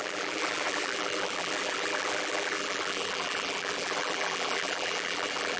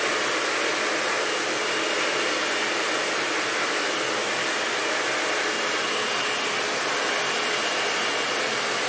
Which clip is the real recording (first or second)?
second